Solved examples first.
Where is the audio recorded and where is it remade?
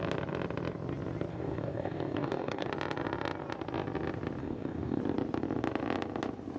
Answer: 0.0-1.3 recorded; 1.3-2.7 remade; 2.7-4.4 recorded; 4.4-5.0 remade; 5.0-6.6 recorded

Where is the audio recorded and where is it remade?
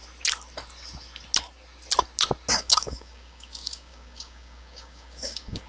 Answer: 0.0-2.5 recorded; 2.5-5.7 remade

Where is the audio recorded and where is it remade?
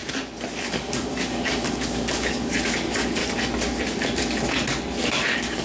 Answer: 0.0-0.6 recorded; 0.6-3.2 remade; 3.2-5.1 recorded; 5.1-5.6 remade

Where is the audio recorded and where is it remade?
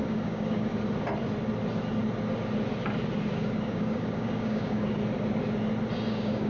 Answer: 0.0-0.7 remade; 0.7-3.3 recorded; 3.3-5.0 remade; 5.0-6.1 recorded; 6.1-6.5 remade